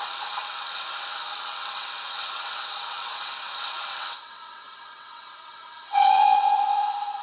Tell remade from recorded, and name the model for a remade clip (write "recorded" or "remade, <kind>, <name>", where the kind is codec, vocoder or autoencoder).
remade, vocoder, WaveNeXt